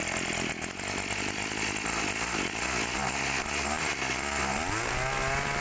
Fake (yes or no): no